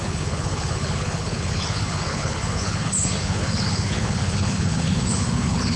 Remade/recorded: remade